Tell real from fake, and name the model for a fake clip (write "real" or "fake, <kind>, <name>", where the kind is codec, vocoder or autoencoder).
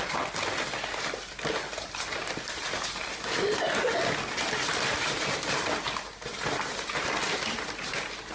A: real